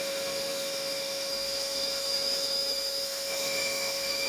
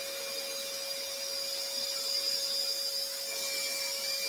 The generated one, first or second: first